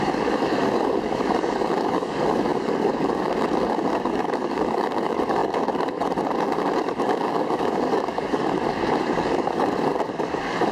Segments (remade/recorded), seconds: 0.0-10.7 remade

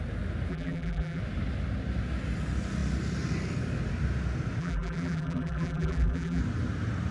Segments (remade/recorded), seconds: 0.0-0.5 recorded; 0.5-1.2 remade; 1.2-4.6 recorded; 4.6-6.4 remade; 6.4-7.1 recorded